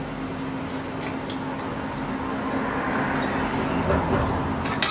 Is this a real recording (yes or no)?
yes